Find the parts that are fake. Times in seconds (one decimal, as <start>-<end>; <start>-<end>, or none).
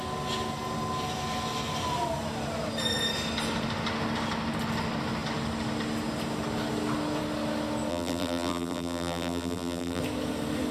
7.9-10.0